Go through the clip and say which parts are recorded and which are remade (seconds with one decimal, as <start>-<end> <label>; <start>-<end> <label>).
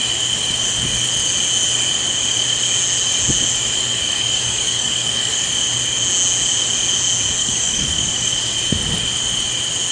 0.0-3.9 recorded; 3.9-5.5 remade; 5.5-7.4 recorded; 7.4-8.3 remade; 8.3-9.9 recorded